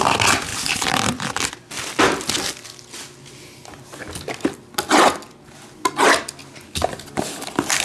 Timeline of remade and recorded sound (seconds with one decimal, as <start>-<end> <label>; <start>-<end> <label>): 0.0-0.5 recorded; 0.5-1.5 remade; 1.5-7.8 recorded